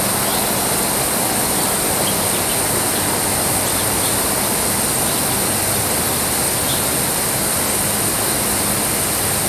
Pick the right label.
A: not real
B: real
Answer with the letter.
B